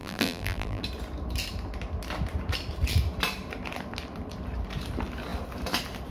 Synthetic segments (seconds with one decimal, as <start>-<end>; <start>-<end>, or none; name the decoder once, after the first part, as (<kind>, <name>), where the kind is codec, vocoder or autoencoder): 0.0-0.8 (vocoder, BigVGAN v2)